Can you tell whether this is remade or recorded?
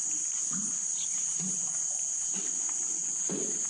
recorded